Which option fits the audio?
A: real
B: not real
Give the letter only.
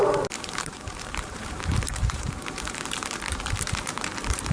B